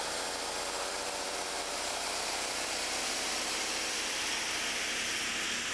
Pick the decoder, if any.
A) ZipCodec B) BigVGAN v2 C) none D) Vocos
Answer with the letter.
B